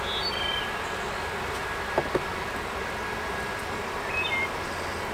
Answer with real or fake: real